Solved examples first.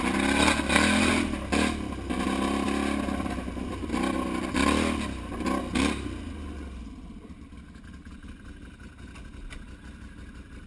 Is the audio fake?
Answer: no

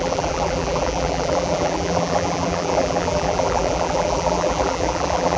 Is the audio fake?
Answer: yes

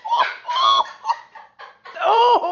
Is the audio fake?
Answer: yes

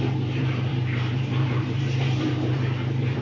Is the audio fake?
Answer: yes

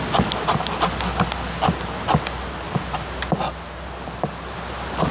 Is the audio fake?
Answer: no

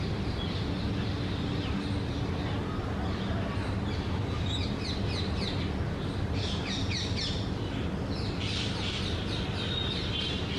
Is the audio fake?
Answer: no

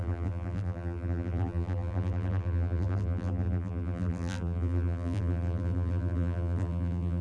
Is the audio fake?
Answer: yes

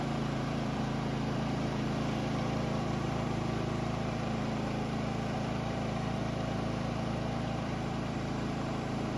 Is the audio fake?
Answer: yes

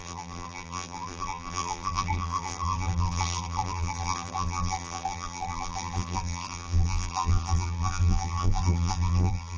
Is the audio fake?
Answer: yes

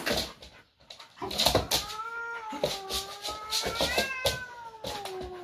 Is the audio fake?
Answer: no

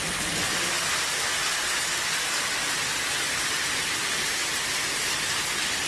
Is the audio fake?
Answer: no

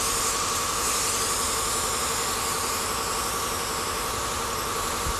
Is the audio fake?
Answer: yes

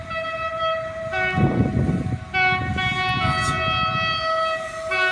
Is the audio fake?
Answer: no